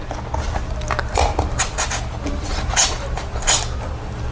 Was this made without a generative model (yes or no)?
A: yes